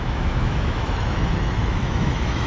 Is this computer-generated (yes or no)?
yes